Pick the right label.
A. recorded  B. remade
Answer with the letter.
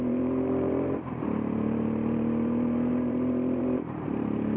B